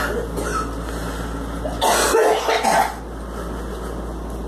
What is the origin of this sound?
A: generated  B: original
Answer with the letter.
B